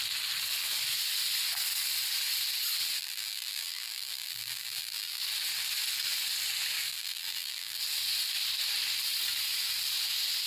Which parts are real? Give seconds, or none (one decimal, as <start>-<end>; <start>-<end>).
0.0-3.0; 5.2-6.9; 7.8-10.5